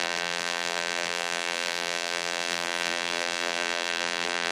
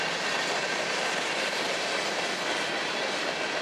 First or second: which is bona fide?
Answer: second